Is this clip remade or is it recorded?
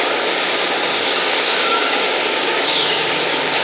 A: remade